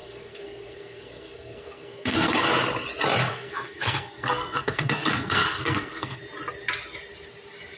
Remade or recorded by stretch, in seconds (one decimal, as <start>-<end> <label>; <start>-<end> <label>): 0.0-2.5 remade; 2.5-3.3 recorded; 3.3-6.2 remade; 6.2-7.8 recorded